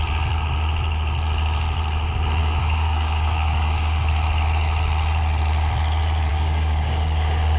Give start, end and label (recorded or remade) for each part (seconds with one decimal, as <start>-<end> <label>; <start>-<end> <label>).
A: 0.0-2.4 recorded; 2.4-4.1 remade; 4.1-6.3 recorded; 6.3-7.6 remade

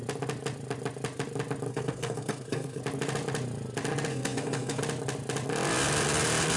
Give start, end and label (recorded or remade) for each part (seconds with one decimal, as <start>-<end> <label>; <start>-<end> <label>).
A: 0.0-1.7 recorded; 1.7-2.8 remade; 2.8-4.1 recorded; 4.1-4.8 remade; 4.8-6.6 recorded

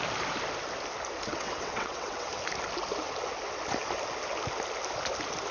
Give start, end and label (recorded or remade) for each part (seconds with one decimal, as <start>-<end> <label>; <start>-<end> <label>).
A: 0.0-1.3 recorded; 1.3-2.3 remade; 2.3-5.5 recorded

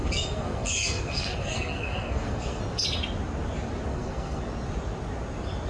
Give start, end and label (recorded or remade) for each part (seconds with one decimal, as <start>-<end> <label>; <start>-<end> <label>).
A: 0.0-2.6 remade; 2.6-3.9 recorded; 3.9-4.4 remade; 4.4-5.7 recorded